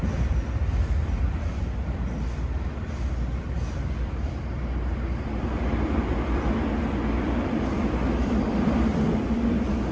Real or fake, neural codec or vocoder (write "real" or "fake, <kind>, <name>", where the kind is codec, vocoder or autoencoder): fake, vocoder, BigVGAN v2